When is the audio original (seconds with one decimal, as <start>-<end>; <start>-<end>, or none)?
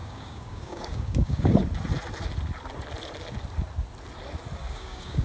1.6-4.7